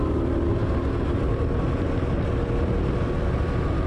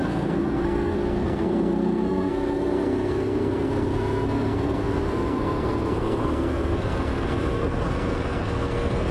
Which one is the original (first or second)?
first